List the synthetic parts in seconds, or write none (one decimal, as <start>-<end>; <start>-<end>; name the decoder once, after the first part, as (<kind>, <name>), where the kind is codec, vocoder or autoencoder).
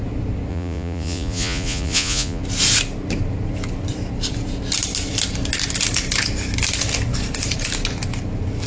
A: 0.5-2.4 (vocoder, Vocos)